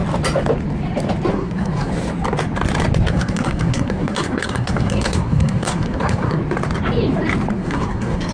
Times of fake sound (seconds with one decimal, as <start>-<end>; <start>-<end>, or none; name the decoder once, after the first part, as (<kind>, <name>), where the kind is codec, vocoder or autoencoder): 1.3-1.9 (codec, SNAC); 3.1-6.4; 7.5-8.3